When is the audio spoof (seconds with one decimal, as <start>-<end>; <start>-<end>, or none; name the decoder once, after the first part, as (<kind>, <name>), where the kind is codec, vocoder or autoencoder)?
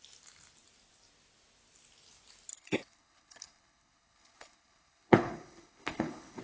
2.5-6.4 (codec, HILCodec)